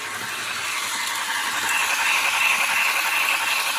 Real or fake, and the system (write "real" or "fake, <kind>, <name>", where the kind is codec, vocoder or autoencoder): real